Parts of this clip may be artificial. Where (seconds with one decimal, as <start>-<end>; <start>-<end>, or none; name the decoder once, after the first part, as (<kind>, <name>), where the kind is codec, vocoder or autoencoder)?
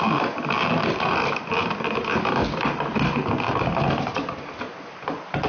none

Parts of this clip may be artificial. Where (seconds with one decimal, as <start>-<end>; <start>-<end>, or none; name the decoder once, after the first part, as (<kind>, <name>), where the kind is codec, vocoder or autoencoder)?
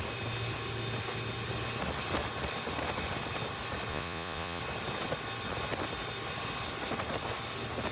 3.9-4.6 (vocoder, Vocos)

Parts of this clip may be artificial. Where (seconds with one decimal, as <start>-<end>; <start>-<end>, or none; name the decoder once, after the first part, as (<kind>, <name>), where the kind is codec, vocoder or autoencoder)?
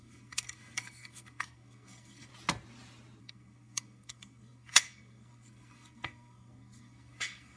0.0-2.3 (codec, SNAC); 3.2-7.6